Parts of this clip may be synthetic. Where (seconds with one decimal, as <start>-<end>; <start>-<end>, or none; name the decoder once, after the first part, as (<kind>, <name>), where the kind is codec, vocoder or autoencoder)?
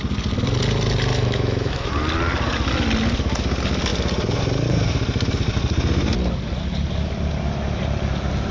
1.1-1.9 (autoencoder, DAC-VAE)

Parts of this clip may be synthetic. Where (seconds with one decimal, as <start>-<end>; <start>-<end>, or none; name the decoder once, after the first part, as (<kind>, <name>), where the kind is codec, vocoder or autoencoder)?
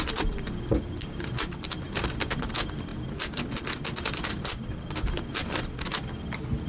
none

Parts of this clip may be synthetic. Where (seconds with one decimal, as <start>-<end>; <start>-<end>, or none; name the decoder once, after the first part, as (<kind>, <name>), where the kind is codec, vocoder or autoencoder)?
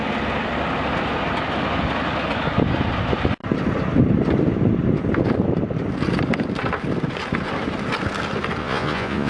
8.6-9.3 (vocoder, Vocos)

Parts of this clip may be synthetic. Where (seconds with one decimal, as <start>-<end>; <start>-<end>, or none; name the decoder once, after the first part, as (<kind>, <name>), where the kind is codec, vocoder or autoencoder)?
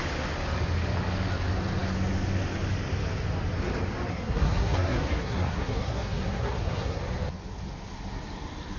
4.1-7.0 (codec, SNAC)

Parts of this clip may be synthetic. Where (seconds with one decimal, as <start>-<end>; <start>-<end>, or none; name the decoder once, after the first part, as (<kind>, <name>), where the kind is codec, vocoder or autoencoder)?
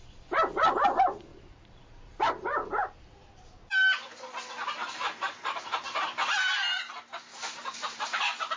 1.3-2.3 (vocoder, BigVGAN v2); 4.8-6.4; 7.3-8.6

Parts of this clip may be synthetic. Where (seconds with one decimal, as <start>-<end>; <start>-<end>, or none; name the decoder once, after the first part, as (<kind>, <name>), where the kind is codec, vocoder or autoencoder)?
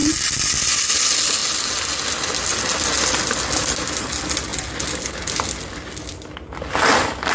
none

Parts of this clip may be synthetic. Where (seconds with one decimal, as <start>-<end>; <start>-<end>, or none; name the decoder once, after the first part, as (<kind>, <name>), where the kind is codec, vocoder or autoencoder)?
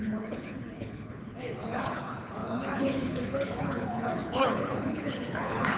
0.0-5.8 (codec, HILCodec)